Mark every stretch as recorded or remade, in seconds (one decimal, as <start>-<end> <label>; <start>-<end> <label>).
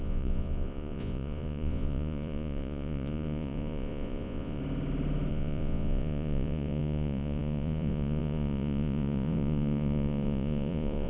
0.0-4.6 remade; 4.6-5.3 recorded; 5.3-11.1 remade